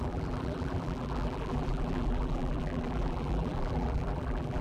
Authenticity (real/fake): fake